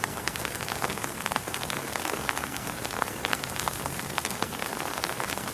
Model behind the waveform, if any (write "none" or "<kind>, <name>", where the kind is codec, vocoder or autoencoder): codec, SNAC